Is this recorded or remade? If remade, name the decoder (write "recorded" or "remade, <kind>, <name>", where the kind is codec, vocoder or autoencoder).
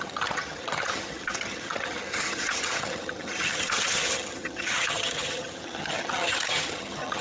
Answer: remade, vocoder, HiFi-GAN